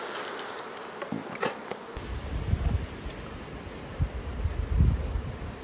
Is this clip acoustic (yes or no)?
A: yes